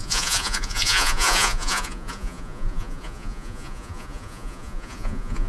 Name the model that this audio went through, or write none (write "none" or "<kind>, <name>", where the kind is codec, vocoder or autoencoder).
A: vocoder, Vocos